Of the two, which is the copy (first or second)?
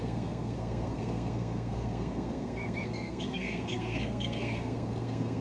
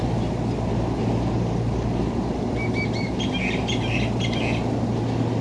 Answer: first